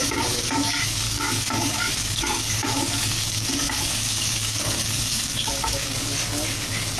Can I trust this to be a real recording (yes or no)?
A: no